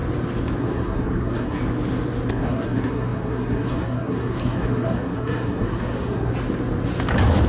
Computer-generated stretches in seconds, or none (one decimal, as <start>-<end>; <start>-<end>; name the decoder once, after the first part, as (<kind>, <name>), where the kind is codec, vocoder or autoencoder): 0.6-1.6 (codec, SNAC); 2.3-6.3